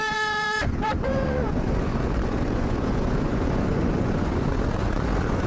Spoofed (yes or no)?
yes